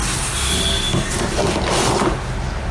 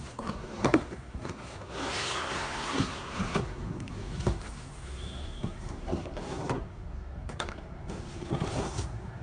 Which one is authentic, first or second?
first